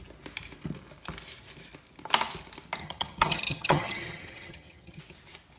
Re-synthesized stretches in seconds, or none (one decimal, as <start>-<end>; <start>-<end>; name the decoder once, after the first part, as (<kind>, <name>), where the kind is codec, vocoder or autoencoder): 2.8-5.0 (vocoder, HiFi-GAN)